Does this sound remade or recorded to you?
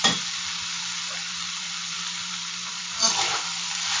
remade